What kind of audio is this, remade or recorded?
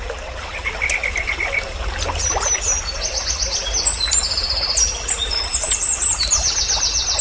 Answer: recorded